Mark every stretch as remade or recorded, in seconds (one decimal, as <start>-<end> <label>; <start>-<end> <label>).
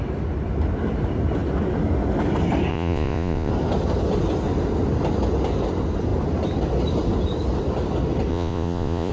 0.0-2.7 recorded; 2.7-3.5 remade; 3.5-8.3 recorded; 8.3-9.1 remade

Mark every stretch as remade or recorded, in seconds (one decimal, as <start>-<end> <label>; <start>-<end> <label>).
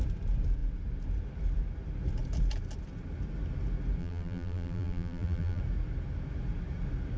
0.0-4.0 recorded; 4.0-5.6 remade; 5.6-7.2 recorded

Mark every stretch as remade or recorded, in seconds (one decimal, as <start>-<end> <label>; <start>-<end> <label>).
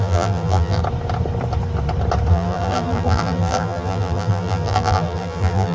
0.0-0.8 remade; 0.8-2.3 recorded; 2.3-5.7 remade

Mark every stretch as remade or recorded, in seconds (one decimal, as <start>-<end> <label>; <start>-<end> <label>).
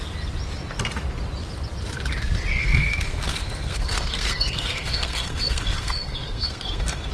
0.0-2.6 recorded; 2.6-7.1 remade